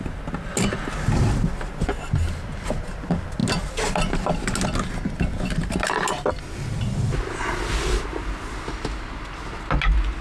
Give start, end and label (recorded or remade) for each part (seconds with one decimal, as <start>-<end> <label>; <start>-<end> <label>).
0.0-10.2 recorded